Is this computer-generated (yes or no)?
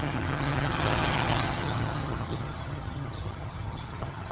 yes